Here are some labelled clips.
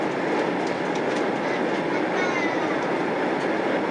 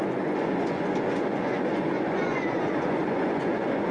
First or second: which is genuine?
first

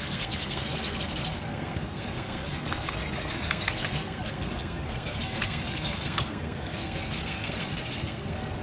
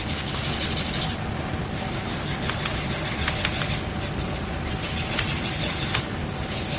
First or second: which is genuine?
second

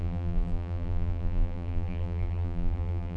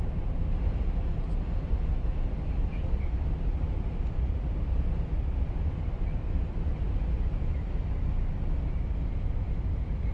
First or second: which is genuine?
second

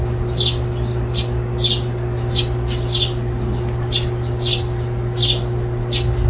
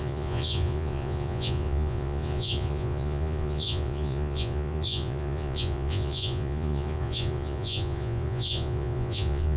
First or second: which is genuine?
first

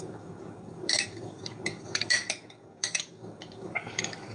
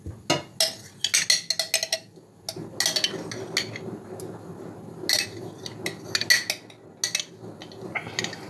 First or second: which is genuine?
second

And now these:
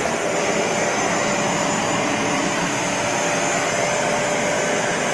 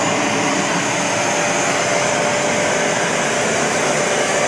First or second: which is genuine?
first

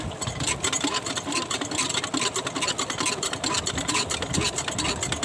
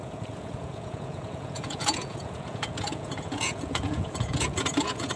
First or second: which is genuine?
first